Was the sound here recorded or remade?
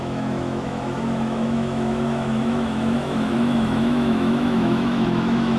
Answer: remade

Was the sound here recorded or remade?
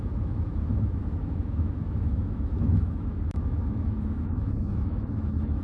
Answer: remade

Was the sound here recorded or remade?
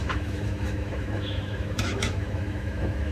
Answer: remade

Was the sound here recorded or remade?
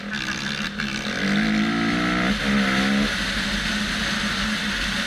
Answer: recorded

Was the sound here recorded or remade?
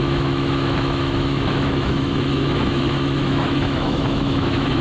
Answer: remade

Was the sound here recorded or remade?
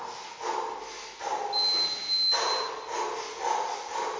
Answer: recorded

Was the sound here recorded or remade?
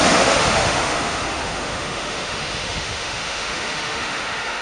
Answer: remade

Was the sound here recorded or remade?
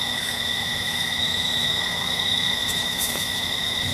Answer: remade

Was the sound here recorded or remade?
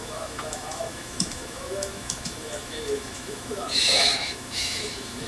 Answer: remade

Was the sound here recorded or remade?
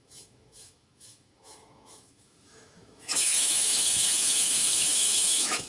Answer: remade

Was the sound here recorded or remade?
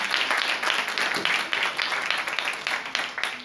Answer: recorded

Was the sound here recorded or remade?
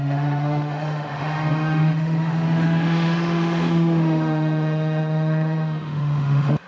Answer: remade